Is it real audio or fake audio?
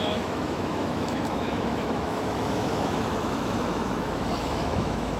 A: fake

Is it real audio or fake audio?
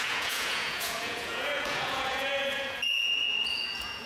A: fake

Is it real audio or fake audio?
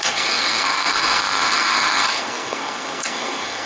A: fake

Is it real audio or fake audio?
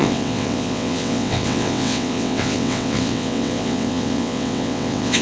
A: fake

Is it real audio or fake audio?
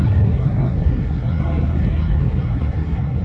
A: fake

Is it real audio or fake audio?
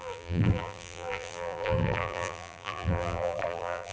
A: fake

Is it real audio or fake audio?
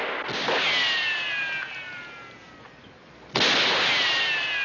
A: real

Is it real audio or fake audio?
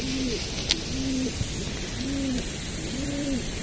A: real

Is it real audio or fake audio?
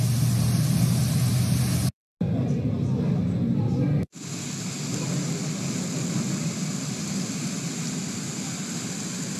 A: real